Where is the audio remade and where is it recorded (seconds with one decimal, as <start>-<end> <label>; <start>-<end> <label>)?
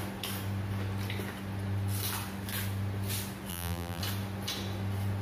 0.0-3.5 recorded; 3.5-4.0 remade; 4.0-5.2 recorded